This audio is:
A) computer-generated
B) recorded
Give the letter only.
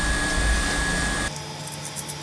B